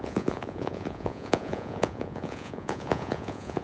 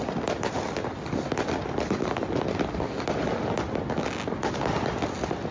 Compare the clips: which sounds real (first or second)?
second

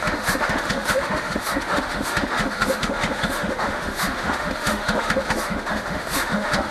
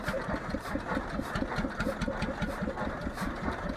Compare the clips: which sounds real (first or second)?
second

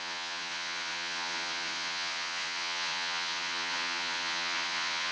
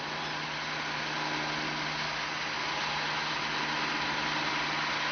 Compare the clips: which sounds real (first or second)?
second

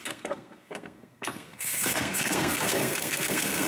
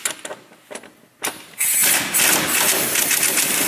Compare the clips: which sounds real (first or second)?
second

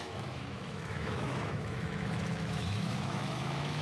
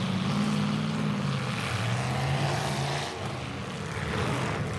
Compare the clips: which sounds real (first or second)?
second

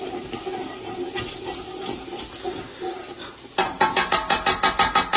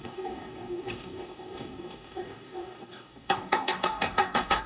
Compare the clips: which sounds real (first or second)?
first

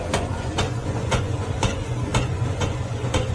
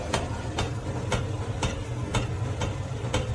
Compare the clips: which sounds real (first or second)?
second